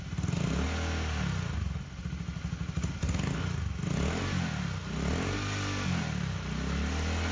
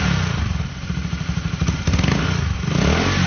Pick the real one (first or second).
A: first